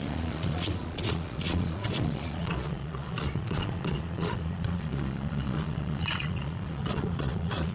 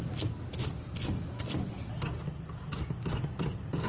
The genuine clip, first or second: second